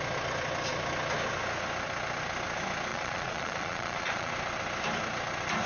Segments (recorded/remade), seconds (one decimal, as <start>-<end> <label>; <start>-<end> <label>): 0.0-2.9 recorded; 2.9-4.3 remade; 4.3-5.7 recorded